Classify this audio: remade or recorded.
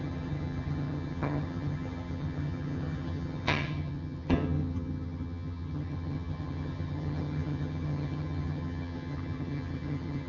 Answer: remade